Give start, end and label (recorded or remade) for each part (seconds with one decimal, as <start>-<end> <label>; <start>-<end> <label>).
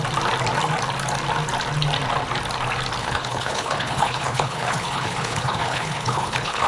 0.0-3.0 recorded; 3.0-6.7 remade